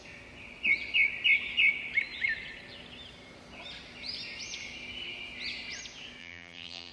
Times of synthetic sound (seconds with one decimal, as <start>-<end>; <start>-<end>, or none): 6.2-6.9